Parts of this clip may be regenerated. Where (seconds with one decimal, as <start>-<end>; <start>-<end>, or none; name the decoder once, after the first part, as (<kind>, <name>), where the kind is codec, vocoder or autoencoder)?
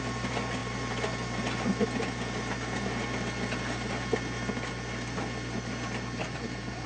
none